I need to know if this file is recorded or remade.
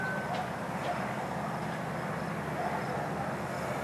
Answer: recorded